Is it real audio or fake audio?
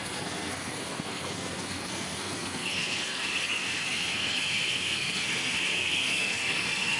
fake